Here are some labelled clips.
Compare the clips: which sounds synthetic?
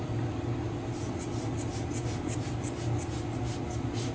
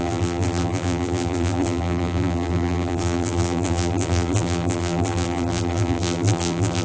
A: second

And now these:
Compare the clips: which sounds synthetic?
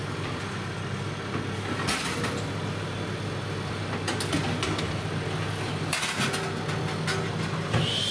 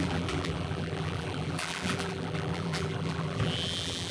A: second